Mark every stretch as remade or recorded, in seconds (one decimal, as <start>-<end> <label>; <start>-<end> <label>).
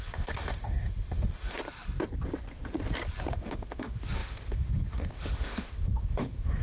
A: 0.0-1.6 remade; 1.6-3.3 recorded; 3.3-6.6 remade